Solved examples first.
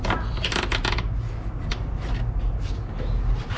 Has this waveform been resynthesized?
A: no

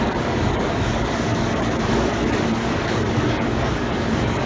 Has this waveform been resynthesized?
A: yes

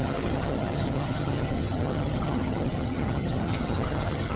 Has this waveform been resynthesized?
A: yes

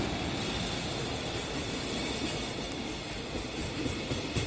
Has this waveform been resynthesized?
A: no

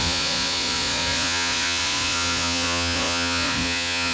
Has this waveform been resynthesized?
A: yes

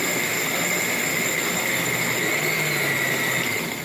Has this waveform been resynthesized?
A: no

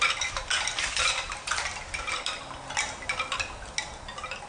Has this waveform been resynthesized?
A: no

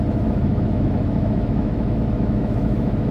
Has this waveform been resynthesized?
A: yes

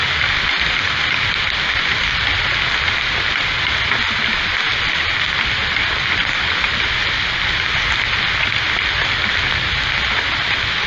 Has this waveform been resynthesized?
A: no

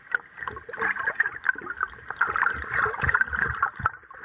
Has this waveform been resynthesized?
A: no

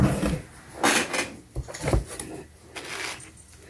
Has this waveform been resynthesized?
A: no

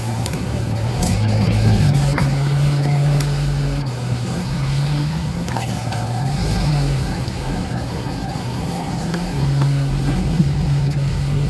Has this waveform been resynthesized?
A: yes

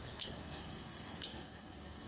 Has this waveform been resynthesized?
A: yes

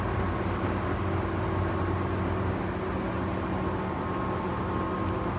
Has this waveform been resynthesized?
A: no